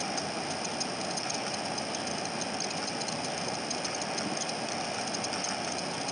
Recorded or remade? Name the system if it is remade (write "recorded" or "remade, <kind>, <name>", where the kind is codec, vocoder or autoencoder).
recorded